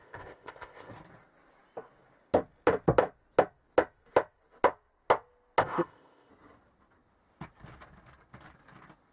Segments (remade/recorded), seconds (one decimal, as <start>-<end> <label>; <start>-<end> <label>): 0.0-0.9 remade; 0.9-5.6 recorded; 5.6-6.3 remade; 6.3-9.1 recorded